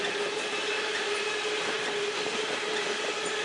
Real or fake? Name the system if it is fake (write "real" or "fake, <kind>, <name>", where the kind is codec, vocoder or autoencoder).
real